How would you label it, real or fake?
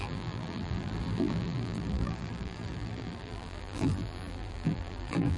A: fake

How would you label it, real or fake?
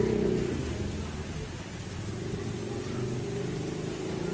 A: real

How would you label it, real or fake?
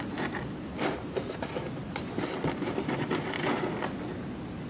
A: real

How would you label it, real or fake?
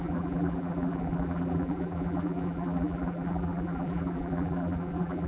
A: fake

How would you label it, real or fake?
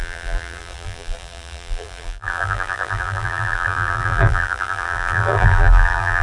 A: fake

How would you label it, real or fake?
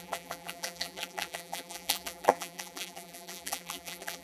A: fake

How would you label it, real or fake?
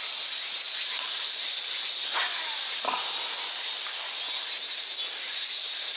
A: real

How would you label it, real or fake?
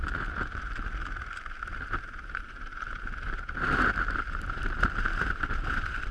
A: real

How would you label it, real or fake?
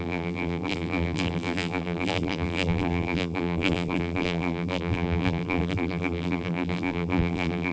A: fake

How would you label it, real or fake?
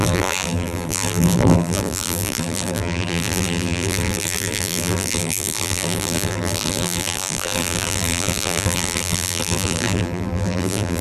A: fake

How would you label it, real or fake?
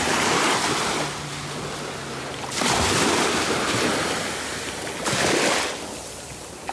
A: real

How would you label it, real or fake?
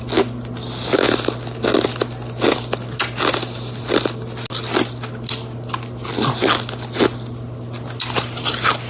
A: real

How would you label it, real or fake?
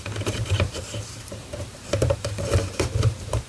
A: fake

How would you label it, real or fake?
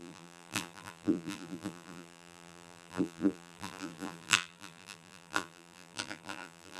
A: fake